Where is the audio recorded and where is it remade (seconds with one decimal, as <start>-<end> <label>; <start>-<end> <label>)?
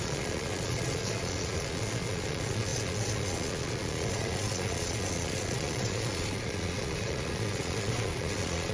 0.0-8.7 remade